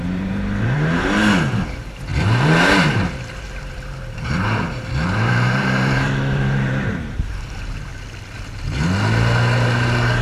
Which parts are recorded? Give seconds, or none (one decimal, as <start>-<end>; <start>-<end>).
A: 7.9-10.2